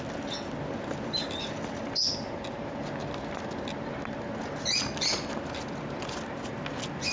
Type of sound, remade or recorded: recorded